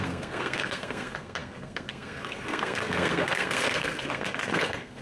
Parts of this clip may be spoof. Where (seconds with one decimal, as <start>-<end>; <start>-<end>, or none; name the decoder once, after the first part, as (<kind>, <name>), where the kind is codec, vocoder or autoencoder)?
0.0-5.0 (codec, SNAC)